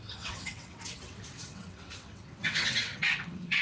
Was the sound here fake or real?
fake